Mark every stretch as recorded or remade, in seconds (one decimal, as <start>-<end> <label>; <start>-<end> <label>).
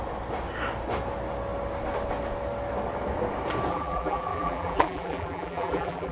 0.0-3.7 recorded; 3.7-6.1 remade